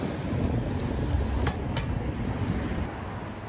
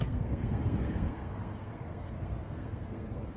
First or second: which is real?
first